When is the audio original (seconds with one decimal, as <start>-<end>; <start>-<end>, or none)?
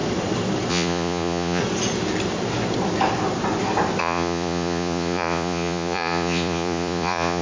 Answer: 0.0-0.7; 1.6-4.0